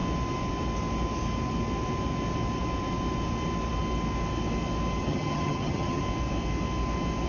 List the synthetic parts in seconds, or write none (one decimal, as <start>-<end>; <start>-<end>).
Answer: 5.0-6.0